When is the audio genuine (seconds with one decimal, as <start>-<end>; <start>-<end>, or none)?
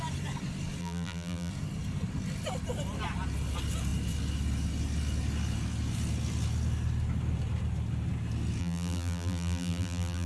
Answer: 0.0-0.8; 1.5-8.6